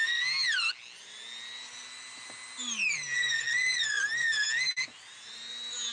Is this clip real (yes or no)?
yes